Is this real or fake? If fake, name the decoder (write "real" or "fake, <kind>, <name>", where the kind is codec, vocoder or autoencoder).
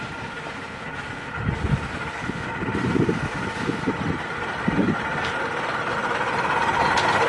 real